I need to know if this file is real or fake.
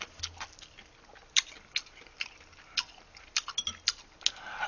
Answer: real